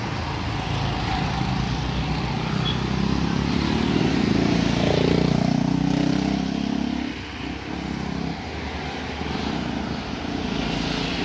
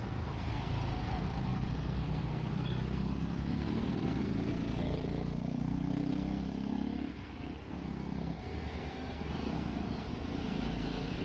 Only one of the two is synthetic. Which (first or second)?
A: second